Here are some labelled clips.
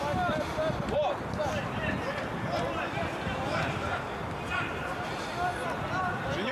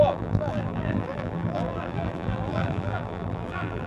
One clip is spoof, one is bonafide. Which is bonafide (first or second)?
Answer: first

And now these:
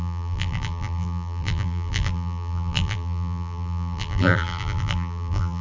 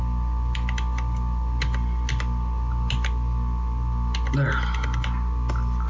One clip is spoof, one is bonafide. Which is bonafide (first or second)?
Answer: second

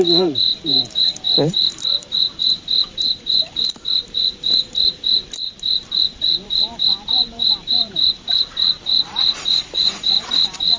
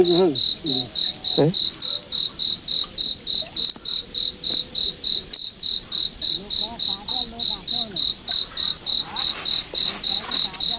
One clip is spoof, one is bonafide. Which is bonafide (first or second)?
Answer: second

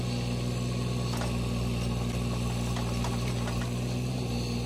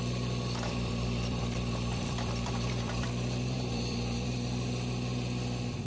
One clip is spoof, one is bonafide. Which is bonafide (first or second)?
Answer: first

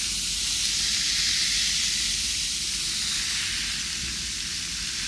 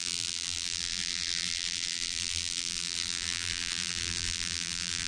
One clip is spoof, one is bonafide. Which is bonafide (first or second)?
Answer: first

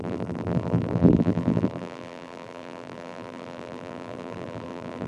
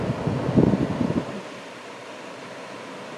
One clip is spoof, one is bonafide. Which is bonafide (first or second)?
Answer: second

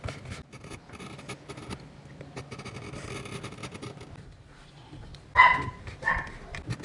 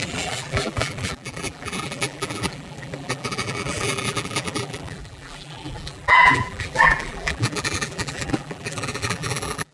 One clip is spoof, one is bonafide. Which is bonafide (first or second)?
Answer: first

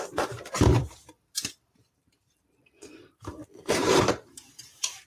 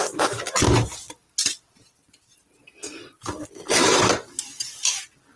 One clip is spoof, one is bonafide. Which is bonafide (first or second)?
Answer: second